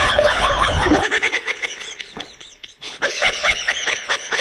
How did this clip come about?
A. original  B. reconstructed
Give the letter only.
B